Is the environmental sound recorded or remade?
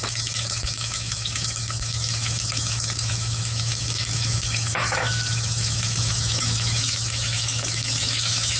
remade